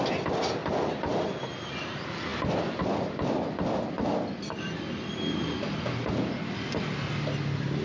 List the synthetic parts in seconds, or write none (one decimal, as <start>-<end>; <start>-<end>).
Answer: none